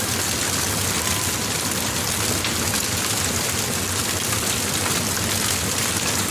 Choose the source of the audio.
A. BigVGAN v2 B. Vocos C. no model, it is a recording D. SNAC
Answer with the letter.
C